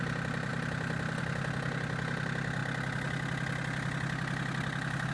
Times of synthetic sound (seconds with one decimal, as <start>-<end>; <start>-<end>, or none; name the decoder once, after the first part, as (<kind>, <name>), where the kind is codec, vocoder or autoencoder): none